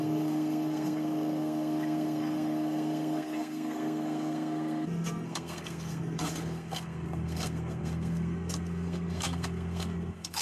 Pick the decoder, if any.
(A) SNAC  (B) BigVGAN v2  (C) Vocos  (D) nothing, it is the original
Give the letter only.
A